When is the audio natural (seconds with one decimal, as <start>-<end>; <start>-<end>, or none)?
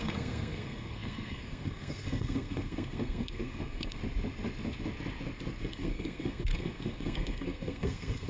4.0-5.6